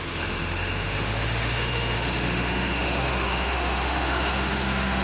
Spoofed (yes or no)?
yes